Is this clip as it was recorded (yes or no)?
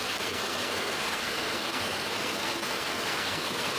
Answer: no